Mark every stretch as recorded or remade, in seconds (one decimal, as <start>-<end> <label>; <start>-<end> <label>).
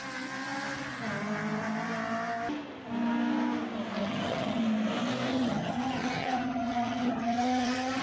0.0-4.0 recorded; 4.0-4.6 remade; 4.6-5.3 recorded; 5.3-8.0 remade